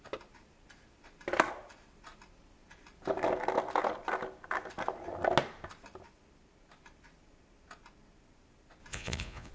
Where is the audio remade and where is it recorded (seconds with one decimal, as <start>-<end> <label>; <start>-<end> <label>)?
0.0-8.9 recorded; 8.9-9.5 remade